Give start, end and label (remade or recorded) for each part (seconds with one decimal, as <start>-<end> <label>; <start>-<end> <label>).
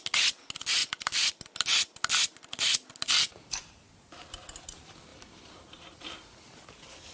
0.0-0.8 recorded; 0.8-1.4 remade; 1.4-3.3 recorded; 3.3-3.9 remade; 3.9-5.1 recorded; 5.1-6.1 remade; 6.1-7.1 recorded